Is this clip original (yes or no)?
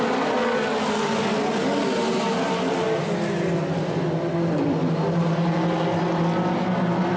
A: yes